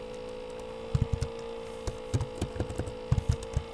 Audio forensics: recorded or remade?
recorded